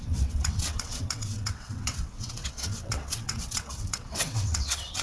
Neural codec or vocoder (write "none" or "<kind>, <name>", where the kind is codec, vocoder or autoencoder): vocoder, WaveNeXt